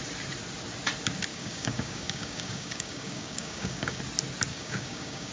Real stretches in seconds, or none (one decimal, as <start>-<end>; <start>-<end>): 0.0-1.3; 4.0-4.5